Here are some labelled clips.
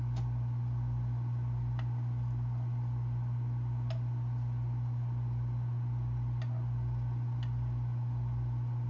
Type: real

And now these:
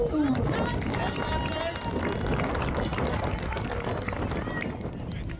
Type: real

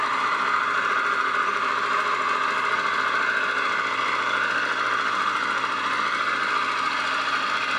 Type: real